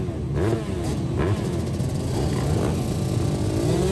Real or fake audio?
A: real